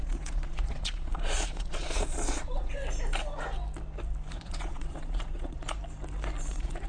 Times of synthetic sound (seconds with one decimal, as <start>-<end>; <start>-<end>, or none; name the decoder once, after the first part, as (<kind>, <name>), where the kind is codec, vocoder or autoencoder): 0.0-2.8 (vocoder, Vocos); 4.3-5.6; 6.5-6.9